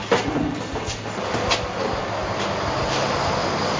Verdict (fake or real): real